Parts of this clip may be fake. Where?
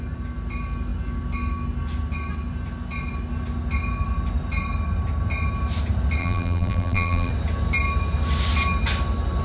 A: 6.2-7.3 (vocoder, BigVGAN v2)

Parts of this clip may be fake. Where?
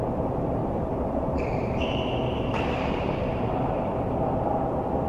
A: 0.0-3.9 (vocoder, BigVGAN v2)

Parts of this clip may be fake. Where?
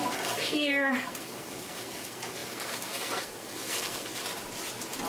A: 0.0-4.2 (codec, SNAC)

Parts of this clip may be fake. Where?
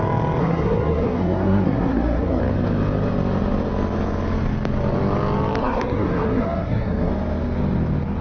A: 0.4-2.4 (codec, SNAC); 5.6-7.1